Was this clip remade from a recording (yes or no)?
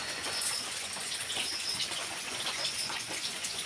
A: yes